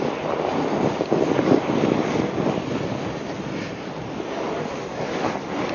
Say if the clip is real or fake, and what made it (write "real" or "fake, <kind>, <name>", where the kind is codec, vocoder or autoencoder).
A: real